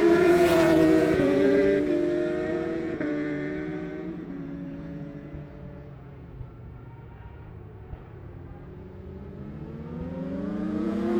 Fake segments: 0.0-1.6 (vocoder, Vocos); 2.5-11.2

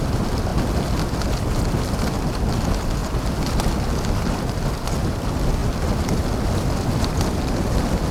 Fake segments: none

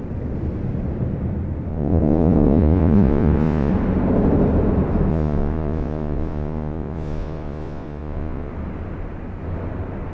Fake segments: 1.7-3.7 (vocoder, Vocos); 5.1-8.5

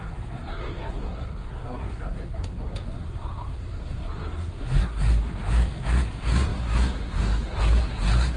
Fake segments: 0.0-8.4 (codec, SNAC)

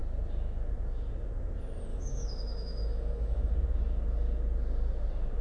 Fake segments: 1.9-3.5 (autoencoder, DAC-VAE)

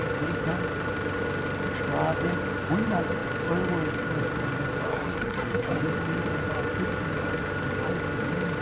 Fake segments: 4.9-5.8 (codec, SNAC)

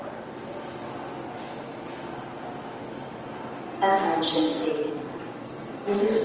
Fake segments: 3.7-6.2 (codec, SNAC)

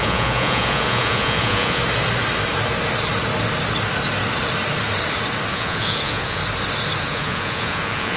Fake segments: 0.0-1.8 (vocoder, Vocos); 5.5-6.4; 7.0-8.2